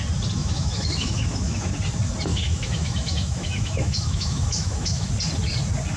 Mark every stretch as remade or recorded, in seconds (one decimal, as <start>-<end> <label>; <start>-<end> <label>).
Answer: 0.0-0.4 recorded; 0.4-1.7 remade; 1.7-2.3 recorded; 2.3-5.1 remade; 5.1-6.0 recorded